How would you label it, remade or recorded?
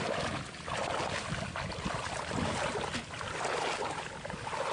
recorded